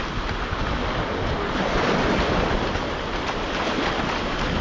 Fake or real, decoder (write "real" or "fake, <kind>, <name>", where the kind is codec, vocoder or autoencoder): real